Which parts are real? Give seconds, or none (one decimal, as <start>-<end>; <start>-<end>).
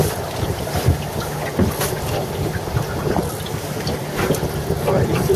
0.0-5.4